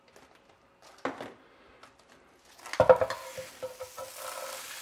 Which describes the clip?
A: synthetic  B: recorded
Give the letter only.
B